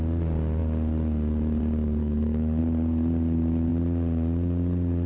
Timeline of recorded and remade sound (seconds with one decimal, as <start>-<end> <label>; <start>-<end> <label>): 0.0-2.0 recorded; 2.0-2.6 remade; 2.6-5.1 recorded